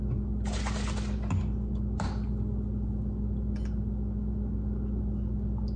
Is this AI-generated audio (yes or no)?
no